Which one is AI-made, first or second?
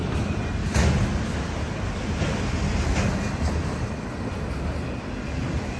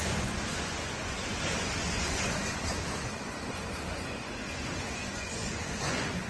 second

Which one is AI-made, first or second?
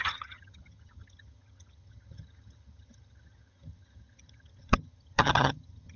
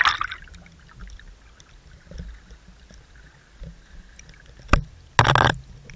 first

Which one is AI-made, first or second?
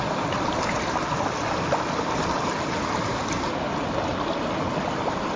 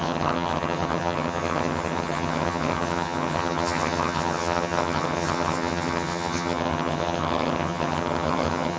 second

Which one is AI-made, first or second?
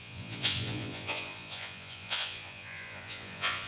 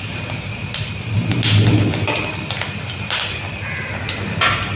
first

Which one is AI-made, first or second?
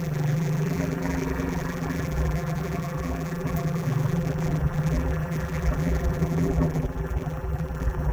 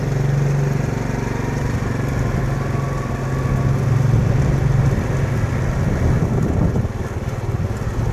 first